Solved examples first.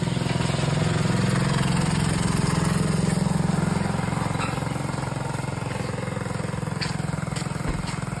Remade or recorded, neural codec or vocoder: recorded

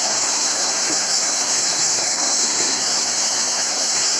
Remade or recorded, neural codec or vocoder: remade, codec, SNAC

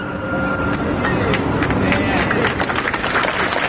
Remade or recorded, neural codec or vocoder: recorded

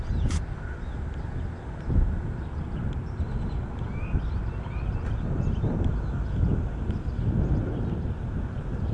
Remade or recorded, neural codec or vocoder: recorded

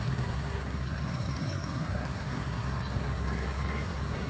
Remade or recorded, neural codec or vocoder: remade, codec, SNAC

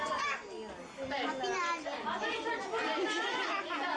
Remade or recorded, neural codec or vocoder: recorded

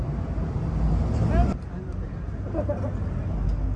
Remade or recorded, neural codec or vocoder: recorded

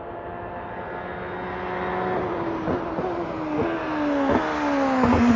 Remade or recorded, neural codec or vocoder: recorded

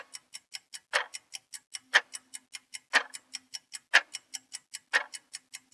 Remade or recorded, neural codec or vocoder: recorded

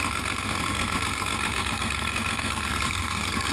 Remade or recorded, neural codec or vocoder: remade, codec, SNAC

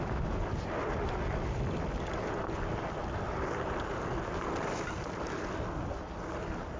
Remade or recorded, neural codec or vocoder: recorded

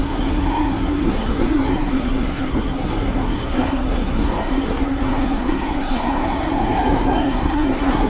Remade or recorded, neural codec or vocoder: remade, codec, SNAC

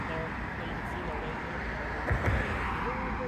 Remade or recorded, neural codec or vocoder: recorded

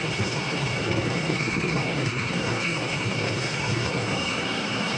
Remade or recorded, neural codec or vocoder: remade, codec, SNAC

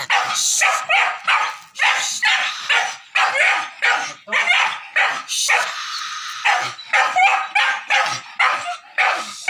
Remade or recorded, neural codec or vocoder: recorded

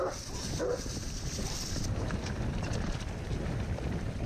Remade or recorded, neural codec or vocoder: recorded